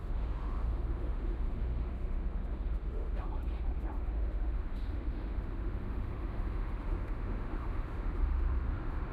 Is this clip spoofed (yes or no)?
yes